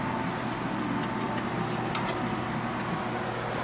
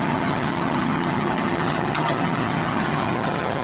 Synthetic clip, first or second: second